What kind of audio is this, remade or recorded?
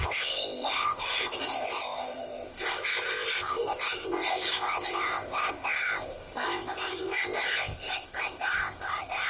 remade